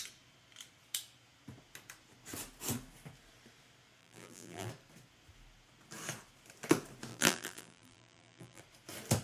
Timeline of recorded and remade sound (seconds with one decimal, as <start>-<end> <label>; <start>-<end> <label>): 0.0-4.0 recorded; 4.0-4.7 remade; 4.7-7.1 recorded; 7.1-8.6 remade; 8.6-9.2 recorded